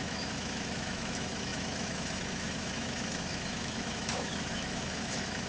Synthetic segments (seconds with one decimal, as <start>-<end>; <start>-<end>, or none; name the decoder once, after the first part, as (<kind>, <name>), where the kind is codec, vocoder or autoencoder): 0.0-5.5 (autoencoder, DAC-VAE)